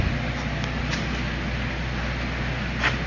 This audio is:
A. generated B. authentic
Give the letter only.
B